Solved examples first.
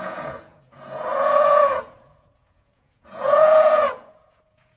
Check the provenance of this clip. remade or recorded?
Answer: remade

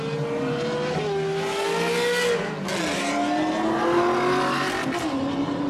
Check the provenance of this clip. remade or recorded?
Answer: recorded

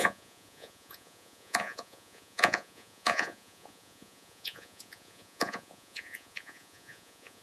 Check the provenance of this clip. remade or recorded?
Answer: remade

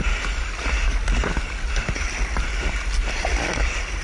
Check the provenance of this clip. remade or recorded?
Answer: recorded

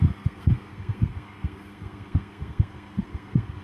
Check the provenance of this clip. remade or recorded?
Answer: remade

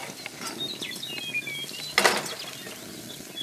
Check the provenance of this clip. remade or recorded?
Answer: recorded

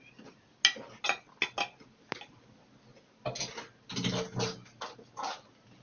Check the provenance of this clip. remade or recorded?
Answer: recorded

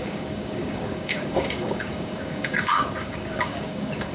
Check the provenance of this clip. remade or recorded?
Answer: remade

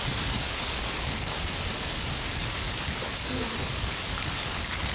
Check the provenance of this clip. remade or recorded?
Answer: remade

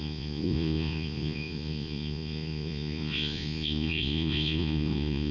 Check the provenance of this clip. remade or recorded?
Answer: remade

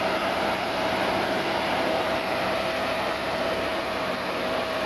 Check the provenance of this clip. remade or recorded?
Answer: remade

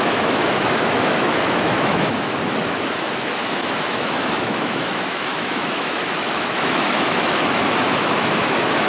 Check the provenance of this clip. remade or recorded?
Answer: remade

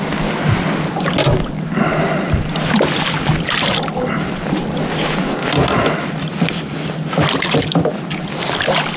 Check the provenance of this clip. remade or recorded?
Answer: recorded